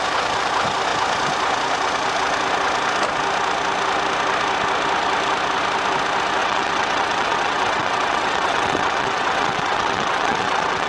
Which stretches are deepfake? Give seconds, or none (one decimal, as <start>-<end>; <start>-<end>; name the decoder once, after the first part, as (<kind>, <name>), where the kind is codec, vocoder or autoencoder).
6.4-10.9 (vocoder, WaveNeXt)